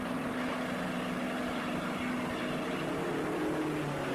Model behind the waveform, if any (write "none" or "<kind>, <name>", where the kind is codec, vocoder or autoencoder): none